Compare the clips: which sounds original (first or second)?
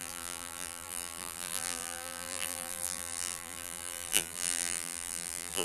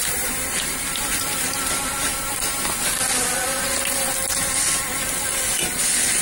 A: second